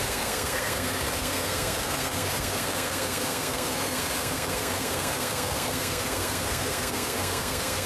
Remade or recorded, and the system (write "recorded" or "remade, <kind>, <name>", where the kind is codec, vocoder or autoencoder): remade, codec, SNAC